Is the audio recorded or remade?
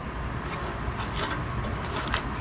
recorded